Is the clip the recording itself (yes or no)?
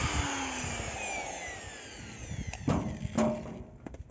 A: yes